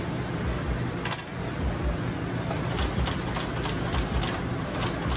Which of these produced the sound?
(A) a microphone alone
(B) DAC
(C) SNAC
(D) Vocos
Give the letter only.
A